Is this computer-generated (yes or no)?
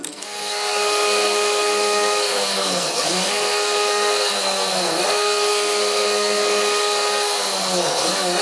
yes